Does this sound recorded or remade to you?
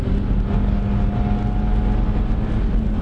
recorded